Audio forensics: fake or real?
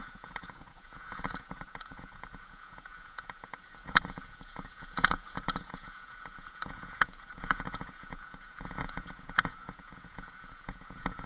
fake